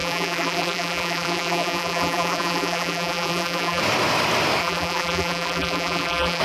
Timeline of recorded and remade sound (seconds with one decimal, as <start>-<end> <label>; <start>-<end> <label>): 0.0-3.8 remade; 3.8-4.6 recorded; 4.6-6.4 remade